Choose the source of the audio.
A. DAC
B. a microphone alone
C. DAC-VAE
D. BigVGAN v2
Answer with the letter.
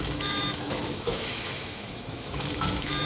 C